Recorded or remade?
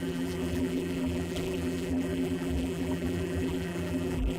remade